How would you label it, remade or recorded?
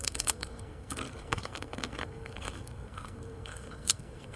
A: remade